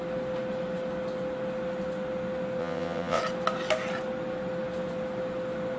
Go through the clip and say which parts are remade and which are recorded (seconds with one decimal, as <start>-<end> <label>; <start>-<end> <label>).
0.0-2.6 recorded; 2.6-3.2 remade; 3.2-5.8 recorded